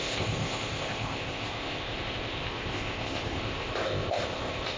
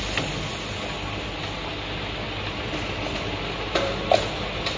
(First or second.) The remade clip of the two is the first